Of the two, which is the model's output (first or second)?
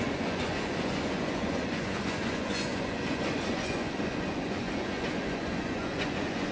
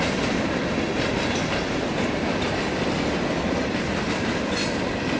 first